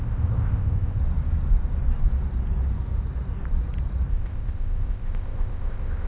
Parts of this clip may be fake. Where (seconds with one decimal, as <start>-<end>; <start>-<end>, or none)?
0.0-1.0; 4.1-6.1